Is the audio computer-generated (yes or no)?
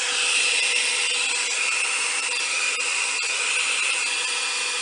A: no